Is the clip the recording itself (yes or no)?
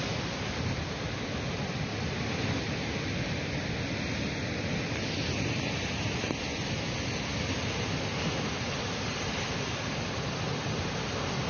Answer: yes